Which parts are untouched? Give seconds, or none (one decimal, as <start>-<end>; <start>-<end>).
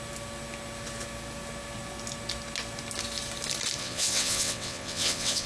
0.0-3.8